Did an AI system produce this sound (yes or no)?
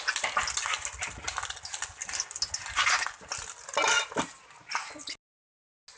no